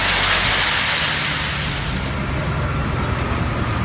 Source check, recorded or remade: recorded